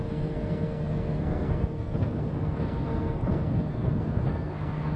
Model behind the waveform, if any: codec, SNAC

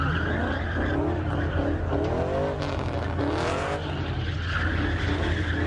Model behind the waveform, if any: none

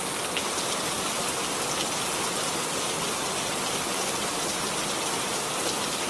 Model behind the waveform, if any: none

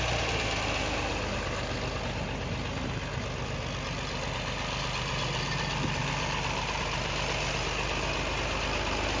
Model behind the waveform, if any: none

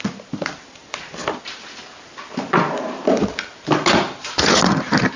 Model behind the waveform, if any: none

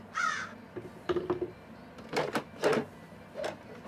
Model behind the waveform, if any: none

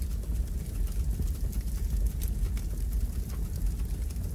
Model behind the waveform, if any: none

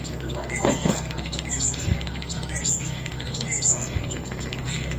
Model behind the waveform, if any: codec, SNAC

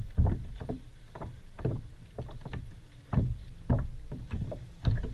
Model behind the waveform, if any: none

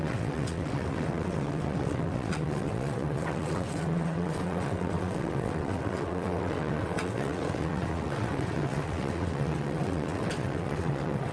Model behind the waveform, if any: vocoder, WaveNeXt